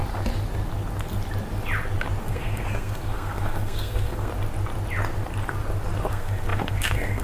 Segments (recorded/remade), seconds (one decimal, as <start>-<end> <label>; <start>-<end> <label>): 0.0-2.2 recorded; 2.2-4.3 remade; 4.3-6.1 recorded; 6.1-7.2 remade

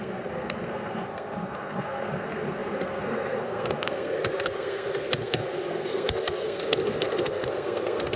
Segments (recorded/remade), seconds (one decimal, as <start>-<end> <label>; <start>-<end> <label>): 0.0-8.2 remade

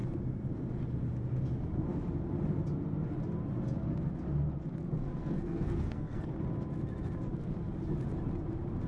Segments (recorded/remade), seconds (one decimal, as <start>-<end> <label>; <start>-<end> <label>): 0.0-5.2 recorded; 5.2-6.3 remade; 6.3-8.9 recorded

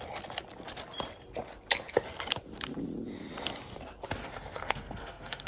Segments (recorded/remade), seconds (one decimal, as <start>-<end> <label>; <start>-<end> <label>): 0.0-4.2 recorded; 4.2-5.5 remade

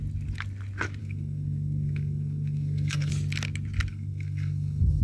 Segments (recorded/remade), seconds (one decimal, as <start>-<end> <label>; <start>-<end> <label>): 0.0-1.0 recorded; 1.0-3.1 remade; 3.1-3.9 recorded; 3.9-5.0 remade

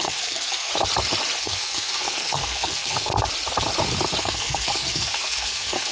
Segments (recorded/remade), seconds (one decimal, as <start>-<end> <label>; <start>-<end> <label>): 0.0-0.7 remade; 0.7-1.4 recorded; 1.4-3.1 remade; 3.1-4.2 recorded; 4.2-5.9 remade

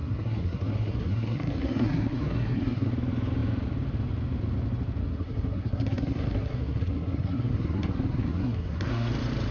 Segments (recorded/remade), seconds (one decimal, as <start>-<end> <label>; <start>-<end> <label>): 0.0-2.9 remade; 2.9-5.0 recorded; 5.0-9.1 remade; 9.1-9.5 recorded